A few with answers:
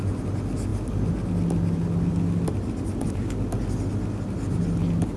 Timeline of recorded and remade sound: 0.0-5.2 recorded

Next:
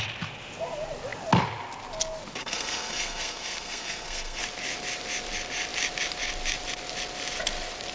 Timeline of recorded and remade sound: 0.0-2.4 recorded; 2.4-4.4 remade; 4.4-7.9 recorded

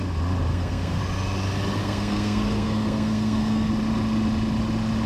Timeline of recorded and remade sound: 0.0-0.5 recorded; 0.5-1.0 remade; 1.0-1.8 recorded; 1.8-3.7 remade; 3.7-5.1 recorded

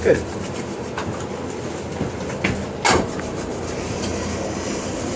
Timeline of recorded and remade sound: 0.0-1.0 remade; 1.0-3.0 recorded; 3.0-4.1 remade; 4.1-4.8 recorded; 4.8-5.2 remade

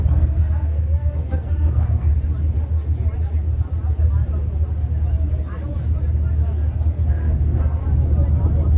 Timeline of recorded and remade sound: 0.0-2.1 remade; 2.1-7.0 recorded; 7.0-7.8 remade; 7.8-8.8 recorded